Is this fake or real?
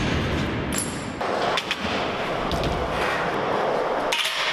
real